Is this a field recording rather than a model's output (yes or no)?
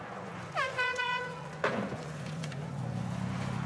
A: no